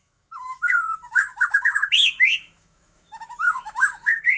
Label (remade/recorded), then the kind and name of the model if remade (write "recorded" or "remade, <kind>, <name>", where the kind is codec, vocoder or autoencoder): remade, autoencoder, DAC-VAE